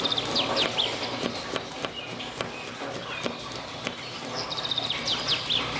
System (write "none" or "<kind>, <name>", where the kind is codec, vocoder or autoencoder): none